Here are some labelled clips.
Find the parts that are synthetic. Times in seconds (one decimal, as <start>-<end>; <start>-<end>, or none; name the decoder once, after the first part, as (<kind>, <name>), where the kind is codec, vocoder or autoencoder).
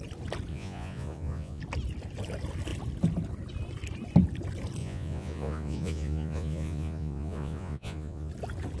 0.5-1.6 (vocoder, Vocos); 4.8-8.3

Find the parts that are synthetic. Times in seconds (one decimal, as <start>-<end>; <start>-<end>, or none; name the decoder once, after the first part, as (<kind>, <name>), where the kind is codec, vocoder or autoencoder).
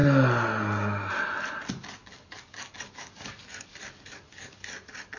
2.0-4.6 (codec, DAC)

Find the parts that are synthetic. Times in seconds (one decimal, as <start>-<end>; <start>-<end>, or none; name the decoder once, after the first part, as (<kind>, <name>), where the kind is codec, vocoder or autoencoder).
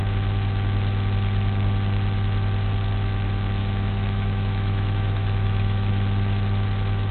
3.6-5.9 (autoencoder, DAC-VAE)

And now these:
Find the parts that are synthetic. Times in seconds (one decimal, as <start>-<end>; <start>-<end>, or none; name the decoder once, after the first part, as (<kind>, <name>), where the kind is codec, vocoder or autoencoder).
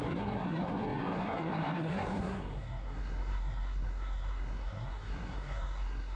0.0-6.2 (codec, SNAC)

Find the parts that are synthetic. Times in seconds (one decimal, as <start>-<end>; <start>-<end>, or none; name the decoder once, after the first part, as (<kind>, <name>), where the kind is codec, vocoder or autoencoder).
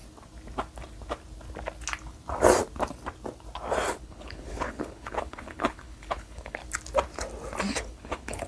4.0-6.6 (codec, HILCodec); 7.7-8.5